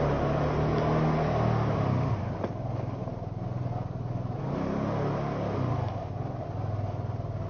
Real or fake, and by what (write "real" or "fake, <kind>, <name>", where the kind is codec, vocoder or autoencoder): real